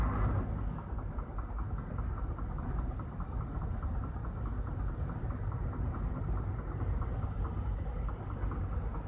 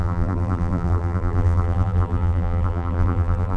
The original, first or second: first